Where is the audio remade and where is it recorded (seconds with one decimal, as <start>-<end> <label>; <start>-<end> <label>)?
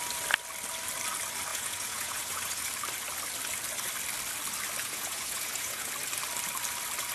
0.0-1.5 recorded; 1.5-2.7 remade; 2.7-4.8 recorded; 4.8-5.9 remade; 5.9-7.1 recorded